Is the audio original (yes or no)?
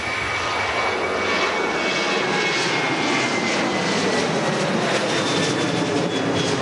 yes